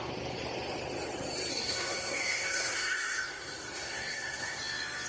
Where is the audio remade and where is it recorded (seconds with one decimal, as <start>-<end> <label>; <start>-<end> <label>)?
0.0-1.5 recorded; 1.5-4.6 remade; 4.6-5.1 recorded